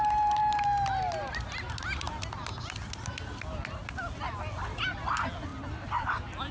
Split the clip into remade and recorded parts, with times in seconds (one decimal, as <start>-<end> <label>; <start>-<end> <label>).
0.0-5.5 recorded; 5.5-6.5 remade